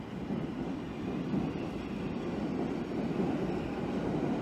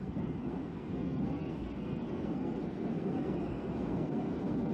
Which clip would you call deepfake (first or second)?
second